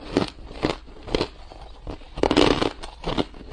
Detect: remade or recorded recorded